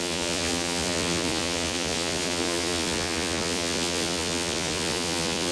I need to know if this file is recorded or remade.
remade